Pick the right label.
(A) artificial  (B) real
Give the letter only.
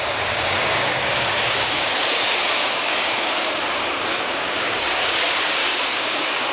A